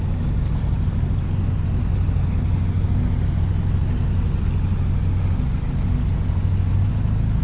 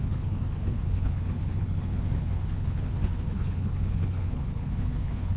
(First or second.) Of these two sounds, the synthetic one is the second